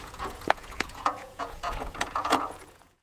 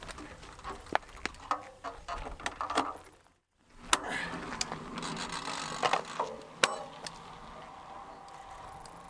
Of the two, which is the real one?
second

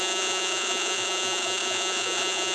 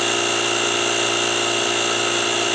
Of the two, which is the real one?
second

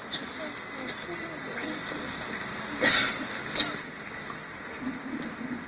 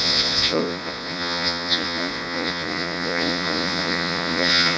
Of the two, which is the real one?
first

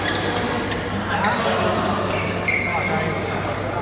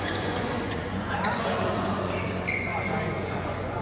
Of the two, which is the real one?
first